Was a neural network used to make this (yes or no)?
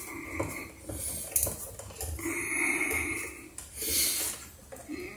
no